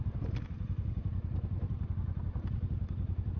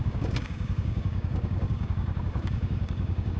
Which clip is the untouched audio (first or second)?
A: first